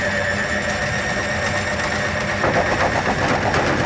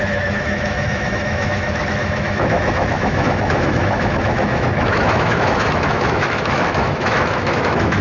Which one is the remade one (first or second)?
second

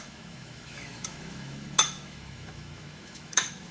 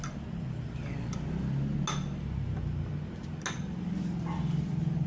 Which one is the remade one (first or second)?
first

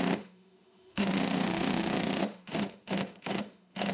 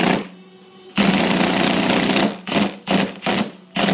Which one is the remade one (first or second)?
first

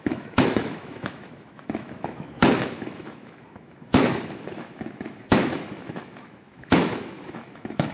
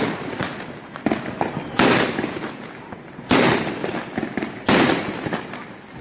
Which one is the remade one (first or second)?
first